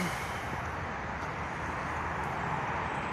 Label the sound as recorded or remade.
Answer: recorded